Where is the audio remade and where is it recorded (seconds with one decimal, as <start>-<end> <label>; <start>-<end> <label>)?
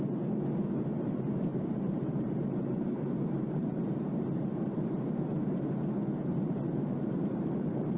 0.0-1.5 recorded; 1.5-5.7 remade; 5.7-6.3 recorded; 6.3-8.0 remade